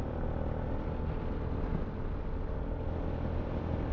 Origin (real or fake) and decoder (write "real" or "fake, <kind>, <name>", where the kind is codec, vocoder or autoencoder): real